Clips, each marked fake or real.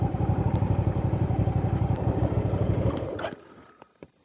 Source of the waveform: fake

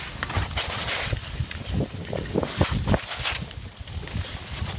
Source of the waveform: real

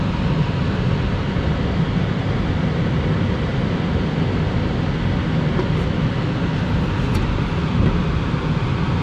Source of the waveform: real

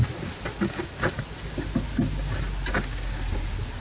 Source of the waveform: real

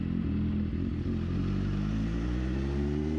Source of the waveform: real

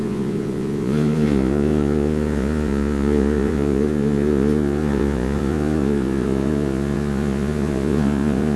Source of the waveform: fake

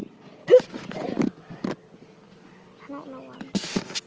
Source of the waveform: real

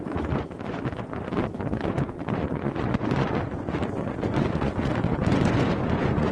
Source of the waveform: fake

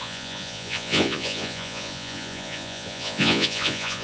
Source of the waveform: fake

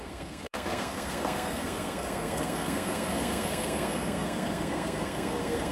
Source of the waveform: fake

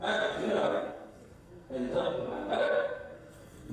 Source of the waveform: fake